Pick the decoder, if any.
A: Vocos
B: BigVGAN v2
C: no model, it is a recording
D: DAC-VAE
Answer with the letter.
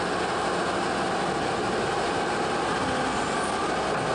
C